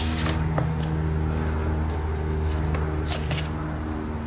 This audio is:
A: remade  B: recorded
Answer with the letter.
B